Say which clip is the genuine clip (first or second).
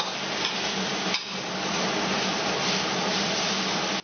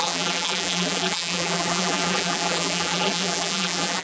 first